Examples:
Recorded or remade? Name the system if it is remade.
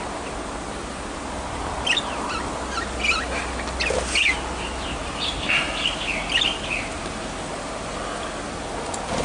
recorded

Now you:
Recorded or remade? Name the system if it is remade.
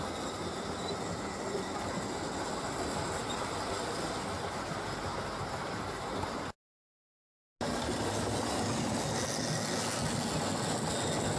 recorded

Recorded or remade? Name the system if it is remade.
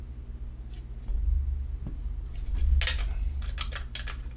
recorded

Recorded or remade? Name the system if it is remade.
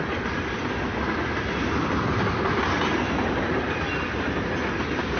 recorded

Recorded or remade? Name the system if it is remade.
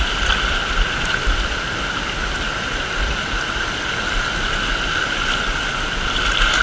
recorded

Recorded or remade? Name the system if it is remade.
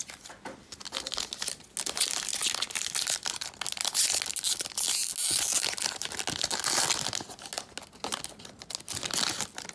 recorded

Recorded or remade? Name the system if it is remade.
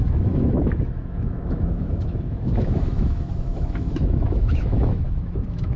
remade, autoencoder, DAC-VAE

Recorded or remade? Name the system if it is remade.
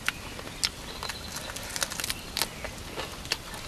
recorded